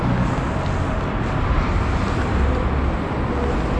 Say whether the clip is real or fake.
real